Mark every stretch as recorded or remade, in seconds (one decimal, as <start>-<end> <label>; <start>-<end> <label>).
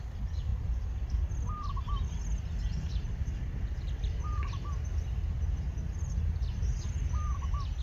0.0-7.8 recorded